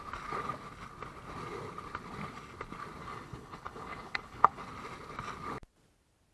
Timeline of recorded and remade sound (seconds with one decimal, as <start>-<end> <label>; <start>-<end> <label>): 0.0-3.0 recorded; 3.0-4.7 remade; 4.7-6.3 recorded